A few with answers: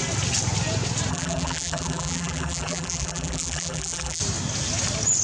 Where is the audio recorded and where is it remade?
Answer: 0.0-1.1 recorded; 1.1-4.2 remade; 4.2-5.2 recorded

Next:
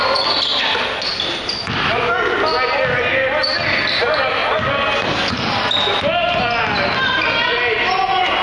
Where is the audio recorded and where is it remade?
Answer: 0.0-8.4 recorded

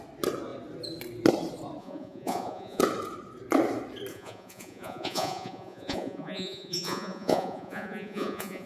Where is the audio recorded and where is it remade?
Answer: 0.0-1.8 recorded; 1.8-2.8 remade; 2.8-4.1 recorded; 4.1-8.7 remade

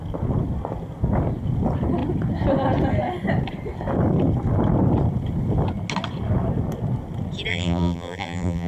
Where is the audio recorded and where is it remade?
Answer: 0.0-7.5 recorded; 7.5-8.7 remade

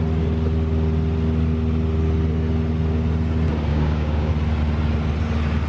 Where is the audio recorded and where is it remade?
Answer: 0.0-3.7 recorded; 3.7-4.3 remade; 4.3-5.7 recorded

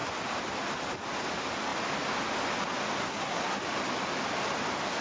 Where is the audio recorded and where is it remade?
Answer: 0.0-3.0 recorded; 3.0-3.6 remade; 3.6-5.0 recorded